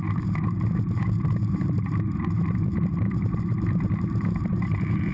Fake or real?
fake